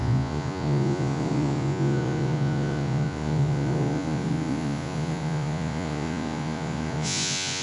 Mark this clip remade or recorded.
remade